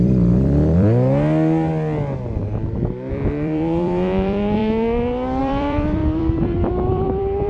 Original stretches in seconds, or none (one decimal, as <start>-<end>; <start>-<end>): 1.7-3.1; 4.6-5.4